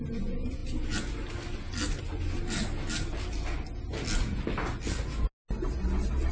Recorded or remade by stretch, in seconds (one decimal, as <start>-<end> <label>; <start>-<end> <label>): 0.0-6.3 recorded